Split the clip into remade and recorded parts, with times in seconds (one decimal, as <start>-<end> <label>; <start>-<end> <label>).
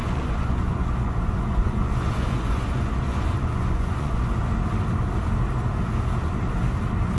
0.0-4.3 remade; 4.3-7.2 recorded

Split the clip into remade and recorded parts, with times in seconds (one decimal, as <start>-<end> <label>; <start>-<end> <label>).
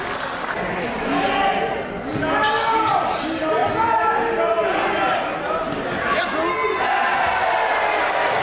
0.0-8.4 recorded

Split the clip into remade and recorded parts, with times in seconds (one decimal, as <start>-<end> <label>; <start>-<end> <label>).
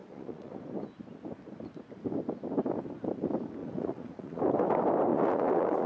0.0-0.6 remade; 0.6-3.6 recorded; 3.6-4.4 remade; 4.4-5.1 recorded; 5.1-5.9 remade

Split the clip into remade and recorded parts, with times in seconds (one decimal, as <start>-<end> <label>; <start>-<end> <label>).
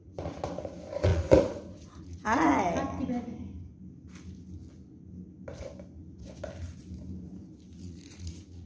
0.0-2.5 remade; 2.5-7.7 recorded; 7.7-8.7 remade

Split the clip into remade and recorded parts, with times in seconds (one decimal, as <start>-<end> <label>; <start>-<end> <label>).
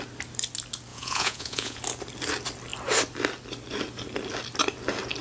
0.0-0.9 recorded; 0.9-1.8 remade; 1.8-5.2 recorded